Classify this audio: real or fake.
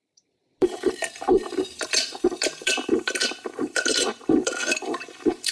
fake